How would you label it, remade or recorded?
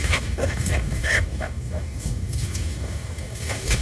remade